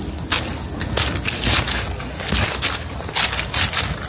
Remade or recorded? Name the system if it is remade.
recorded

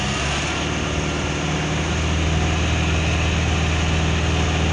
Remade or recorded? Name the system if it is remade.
recorded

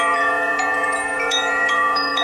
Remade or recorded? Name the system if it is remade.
remade, vocoder, Vocos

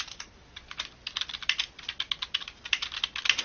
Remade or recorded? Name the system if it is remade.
recorded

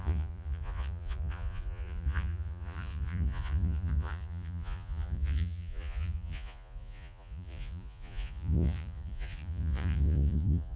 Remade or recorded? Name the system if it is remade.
remade, vocoder, Vocos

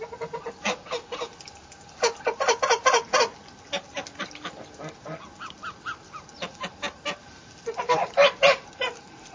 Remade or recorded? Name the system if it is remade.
recorded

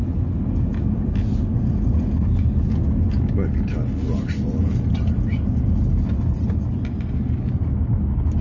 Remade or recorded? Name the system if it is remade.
recorded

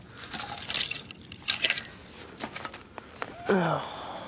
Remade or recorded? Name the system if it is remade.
recorded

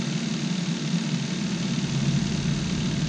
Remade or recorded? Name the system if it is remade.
recorded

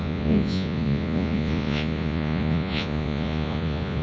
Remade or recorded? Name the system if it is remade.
remade, vocoder, Vocos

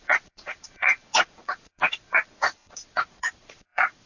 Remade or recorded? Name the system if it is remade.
remade, vocoder, Vocos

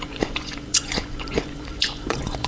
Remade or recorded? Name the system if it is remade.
remade, vocoder, Vocos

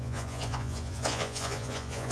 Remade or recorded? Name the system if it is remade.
remade, vocoder, Vocos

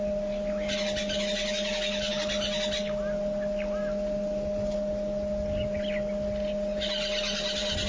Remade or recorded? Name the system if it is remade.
recorded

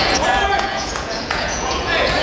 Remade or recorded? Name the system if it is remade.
remade, vocoder, Vocos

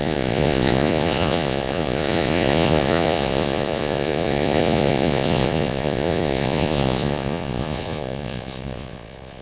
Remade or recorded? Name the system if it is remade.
remade, vocoder, Vocos